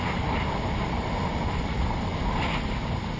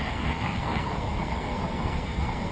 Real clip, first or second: first